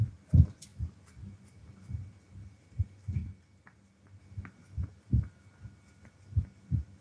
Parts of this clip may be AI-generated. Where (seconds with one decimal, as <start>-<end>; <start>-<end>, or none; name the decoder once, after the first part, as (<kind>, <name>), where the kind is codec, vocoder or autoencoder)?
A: none